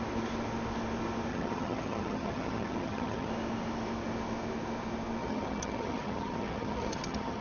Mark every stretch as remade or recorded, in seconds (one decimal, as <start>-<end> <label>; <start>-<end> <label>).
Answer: 0.0-1.3 recorded; 1.3-3.3 remade; 3.3-5.2 recorded; 5.2-7.4 remade